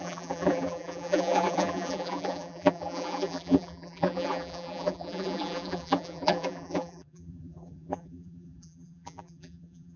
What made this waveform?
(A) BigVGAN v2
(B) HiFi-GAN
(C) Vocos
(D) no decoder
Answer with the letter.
A